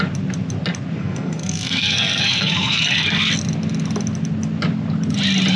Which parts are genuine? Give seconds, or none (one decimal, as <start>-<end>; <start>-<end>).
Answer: 0.0-1.0; 3.3-5.6